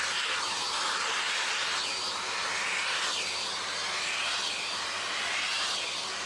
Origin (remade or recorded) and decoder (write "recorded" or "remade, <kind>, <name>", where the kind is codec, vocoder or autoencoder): recorded